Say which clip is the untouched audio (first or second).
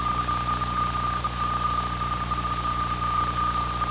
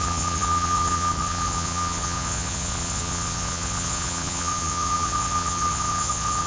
first